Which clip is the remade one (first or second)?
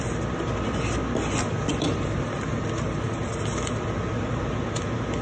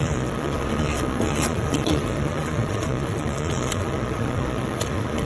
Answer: second